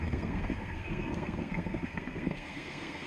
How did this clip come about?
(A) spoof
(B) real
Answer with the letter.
A